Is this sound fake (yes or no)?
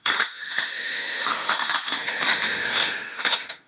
yes